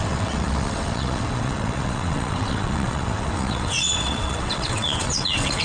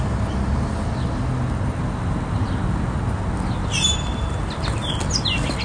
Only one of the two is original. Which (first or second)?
second